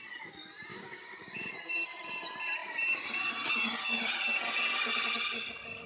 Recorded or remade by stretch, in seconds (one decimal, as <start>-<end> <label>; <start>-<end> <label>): 0.0-0.7 recorded; 0.7-1.5 remade; 1.5-5.9 recorded